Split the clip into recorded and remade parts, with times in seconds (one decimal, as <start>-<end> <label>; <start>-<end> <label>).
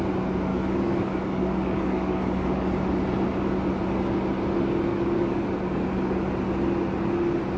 0.0-0.5 recorded; 0.5-2.7 remade; 2.7-4.9 recorded; 4.9-5.4 remade; 5.4-7.6 recorded